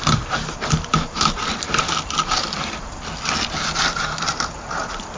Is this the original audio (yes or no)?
yes